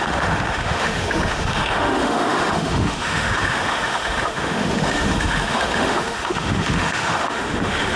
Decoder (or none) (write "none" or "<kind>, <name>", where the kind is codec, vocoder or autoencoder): autoencoder, DAC-VAE